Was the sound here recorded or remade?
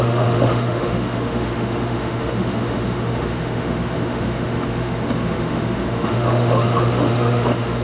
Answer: remade